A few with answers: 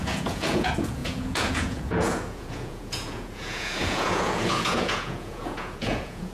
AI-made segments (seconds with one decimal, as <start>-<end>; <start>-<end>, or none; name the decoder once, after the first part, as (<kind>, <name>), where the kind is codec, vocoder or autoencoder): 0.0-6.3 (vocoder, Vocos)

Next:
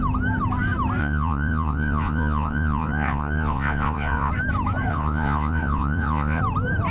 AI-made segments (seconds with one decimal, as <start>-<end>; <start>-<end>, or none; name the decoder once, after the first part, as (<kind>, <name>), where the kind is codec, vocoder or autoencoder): 1.0-4.3 (vocoder, Vocos); 4.9-6.4

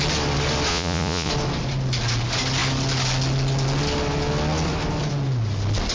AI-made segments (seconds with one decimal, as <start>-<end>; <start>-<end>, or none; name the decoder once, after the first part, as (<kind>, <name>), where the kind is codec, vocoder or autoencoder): 0.7-1.3 (vocoder, Vocos)